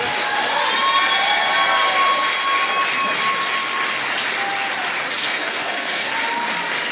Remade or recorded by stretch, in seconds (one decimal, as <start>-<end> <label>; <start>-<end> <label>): 0.0-5.2 recorded; 5.2-6.1 remade; 6.1-6.9 recorded